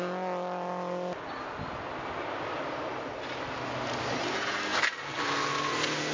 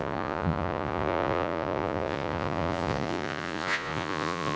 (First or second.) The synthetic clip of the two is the second